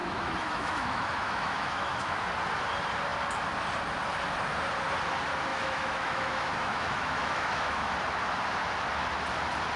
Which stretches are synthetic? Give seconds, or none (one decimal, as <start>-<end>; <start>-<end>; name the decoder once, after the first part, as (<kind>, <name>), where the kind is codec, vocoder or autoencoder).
0.0-2.3 (autoencoder, DAC-VAE); 5.5-7.9